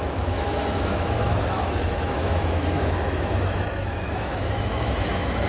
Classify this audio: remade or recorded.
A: remade